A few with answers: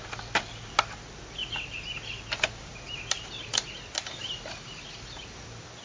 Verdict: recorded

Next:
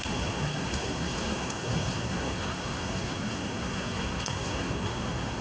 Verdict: remade